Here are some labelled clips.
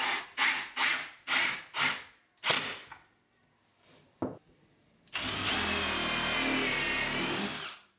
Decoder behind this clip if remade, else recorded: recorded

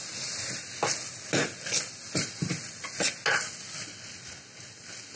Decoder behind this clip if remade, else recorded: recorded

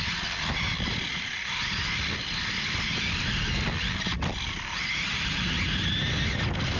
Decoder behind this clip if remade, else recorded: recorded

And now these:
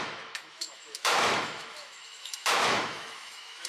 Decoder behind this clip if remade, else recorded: remade, autoencoder, DAC-VAE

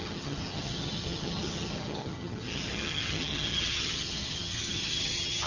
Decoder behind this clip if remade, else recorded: remade, vocoder, HiFi-GAN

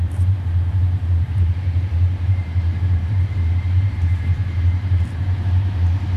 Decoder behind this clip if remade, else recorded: remade, vocoder, BigVGAN v2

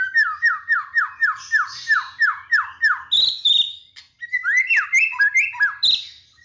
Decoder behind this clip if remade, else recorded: recorded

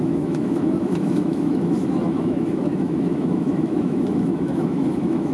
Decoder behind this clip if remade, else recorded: remade, autoencoder, DAC-VAE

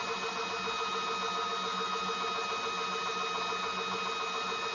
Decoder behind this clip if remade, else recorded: recorded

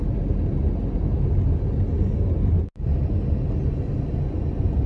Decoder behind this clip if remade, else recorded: recorded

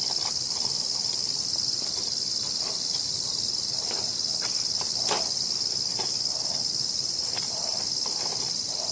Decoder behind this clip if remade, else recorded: recorded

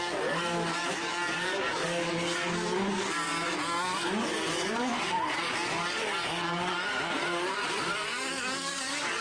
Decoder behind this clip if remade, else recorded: remade, codec, DAC